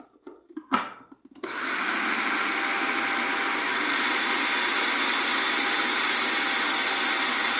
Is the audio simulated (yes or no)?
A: no